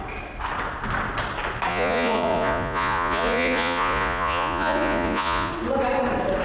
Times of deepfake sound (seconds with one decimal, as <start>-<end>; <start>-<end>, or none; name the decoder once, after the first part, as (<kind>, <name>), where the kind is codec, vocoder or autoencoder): 1.7-5.5 (vocoder, Vocos)